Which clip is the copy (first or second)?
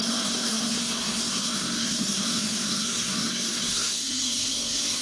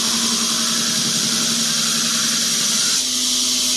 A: first